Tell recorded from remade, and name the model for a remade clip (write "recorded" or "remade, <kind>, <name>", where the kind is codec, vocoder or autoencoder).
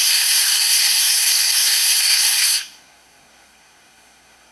remade, codec, SNAC